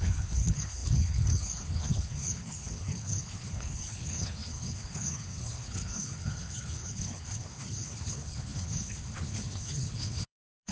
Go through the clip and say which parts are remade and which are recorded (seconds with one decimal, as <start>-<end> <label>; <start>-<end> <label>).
0.0-10.7 remade